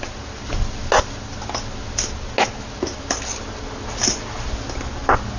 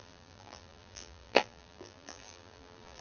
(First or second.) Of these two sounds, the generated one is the second